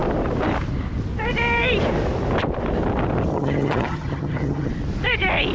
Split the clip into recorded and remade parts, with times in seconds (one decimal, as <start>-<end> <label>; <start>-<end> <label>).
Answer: 0.0-3.3 recorded; 3.3-4.7 remade; 4.7-5.5 recorded